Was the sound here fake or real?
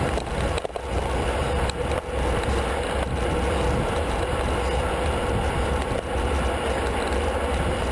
real